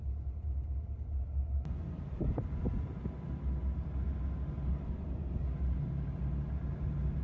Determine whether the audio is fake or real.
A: real